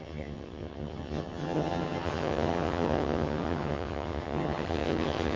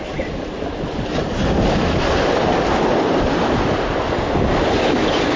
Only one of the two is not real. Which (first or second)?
first